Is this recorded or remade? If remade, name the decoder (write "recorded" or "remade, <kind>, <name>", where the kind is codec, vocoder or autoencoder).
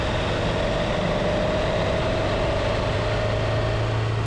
recorded